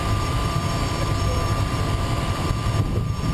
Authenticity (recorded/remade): remade